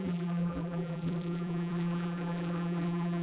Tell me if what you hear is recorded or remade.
remade